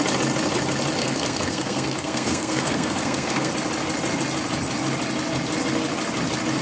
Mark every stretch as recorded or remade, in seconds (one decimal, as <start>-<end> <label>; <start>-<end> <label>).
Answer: 0.0-1.0 recorded; 1.0-3.5 remade; 3.5-6.6 recorded